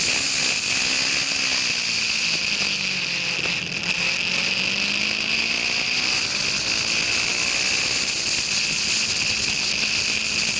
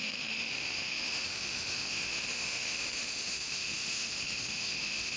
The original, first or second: first